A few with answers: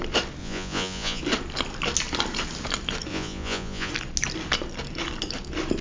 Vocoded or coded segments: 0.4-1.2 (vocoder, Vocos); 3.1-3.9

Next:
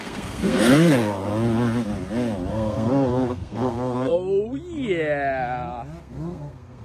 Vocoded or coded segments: 0.0-1.3 (codec, SNAC); 2.5-4.1; 6.0-6.8

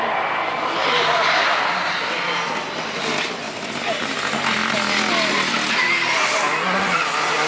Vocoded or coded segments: none

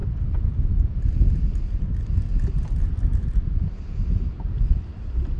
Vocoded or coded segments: none

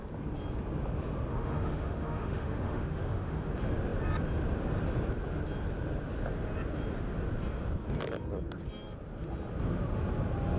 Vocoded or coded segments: 1.3-3.5 (autoencoder, DAC-VAE)

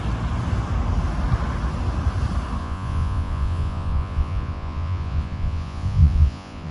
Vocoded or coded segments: 2.6-6.7 (vocoder, Vocos)

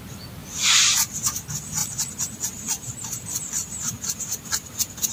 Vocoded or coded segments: 0.4-1.4 (vocoder, BigVGAN v2); 1.8-5.1

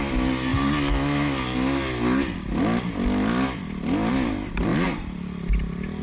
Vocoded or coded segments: none